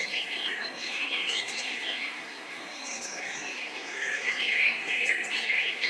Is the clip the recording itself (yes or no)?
no